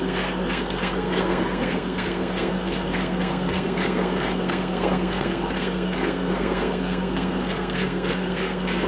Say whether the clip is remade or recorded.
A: remade